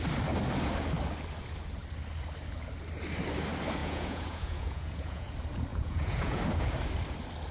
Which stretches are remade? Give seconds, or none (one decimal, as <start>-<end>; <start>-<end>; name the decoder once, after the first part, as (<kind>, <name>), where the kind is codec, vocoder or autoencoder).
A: 3.8-5.3 (vocoder, Vocos); 5.7-6.4